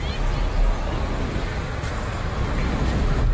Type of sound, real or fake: real